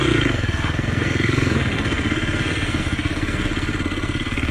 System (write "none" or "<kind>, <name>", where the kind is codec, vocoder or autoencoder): codec, SNAC